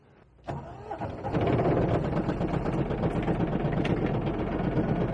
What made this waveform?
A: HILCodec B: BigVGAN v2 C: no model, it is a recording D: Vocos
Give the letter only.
C